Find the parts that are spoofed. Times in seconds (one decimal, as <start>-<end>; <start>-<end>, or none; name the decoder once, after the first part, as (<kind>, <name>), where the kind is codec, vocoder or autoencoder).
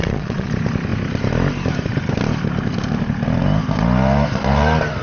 0.0-0.5 (vocoder, Vocos)